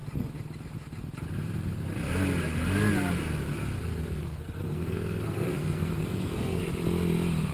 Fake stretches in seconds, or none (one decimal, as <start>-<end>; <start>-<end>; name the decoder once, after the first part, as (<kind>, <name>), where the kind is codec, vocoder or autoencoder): 4.2-6.6 (codec, SNAC)